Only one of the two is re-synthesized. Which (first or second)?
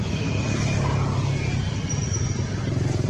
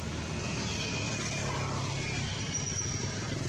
first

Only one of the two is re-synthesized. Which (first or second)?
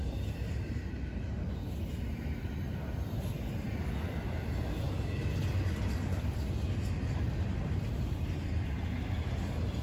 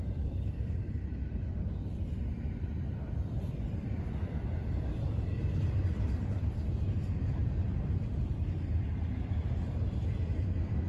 second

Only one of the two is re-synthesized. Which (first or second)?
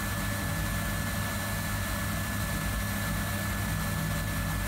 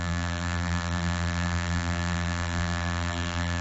second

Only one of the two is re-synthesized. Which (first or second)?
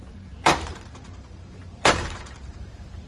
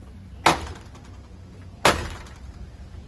first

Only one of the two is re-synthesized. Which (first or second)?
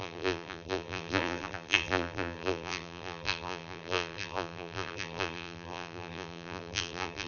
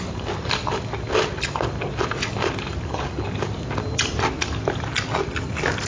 first